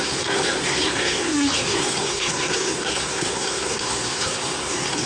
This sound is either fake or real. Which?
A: fake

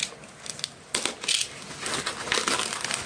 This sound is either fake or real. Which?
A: real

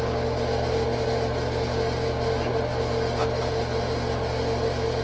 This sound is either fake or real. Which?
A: real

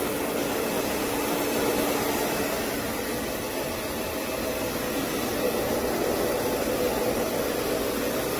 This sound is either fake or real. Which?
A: real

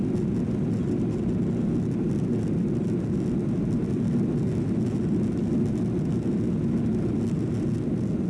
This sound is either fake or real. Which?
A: real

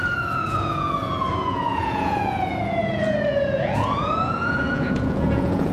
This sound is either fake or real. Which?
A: fake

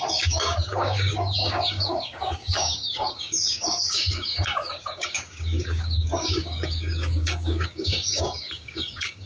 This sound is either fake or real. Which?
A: fake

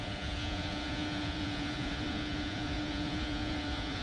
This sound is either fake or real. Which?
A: fake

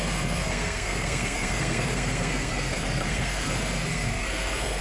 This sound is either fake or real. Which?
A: fake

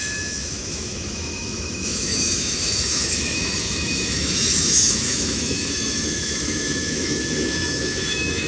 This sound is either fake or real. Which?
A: fake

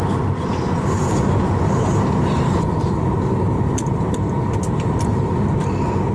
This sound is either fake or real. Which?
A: real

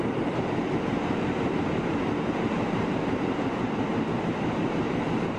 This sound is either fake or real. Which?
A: fake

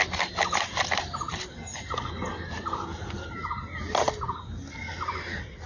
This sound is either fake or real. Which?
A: real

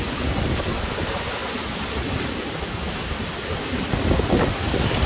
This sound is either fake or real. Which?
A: real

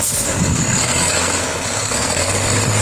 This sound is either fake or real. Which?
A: fake